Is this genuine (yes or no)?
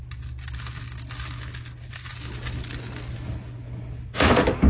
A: yes